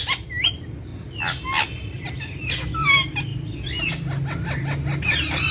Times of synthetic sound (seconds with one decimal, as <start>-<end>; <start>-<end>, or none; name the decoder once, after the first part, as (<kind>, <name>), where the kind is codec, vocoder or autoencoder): none